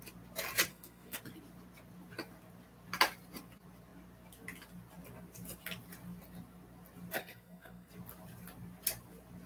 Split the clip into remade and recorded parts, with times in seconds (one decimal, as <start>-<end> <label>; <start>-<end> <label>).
0.0-0.7 recorded; 0.7-1.2 remade; 1.2-7.2 recorded; 7.2-7.9 remade; 7.9-9.5 recorded